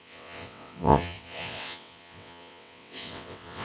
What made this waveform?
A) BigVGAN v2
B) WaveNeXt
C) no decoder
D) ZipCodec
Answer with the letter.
B